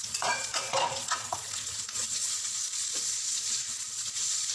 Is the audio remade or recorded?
remade